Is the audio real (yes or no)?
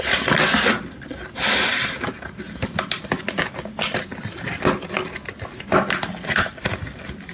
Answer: yes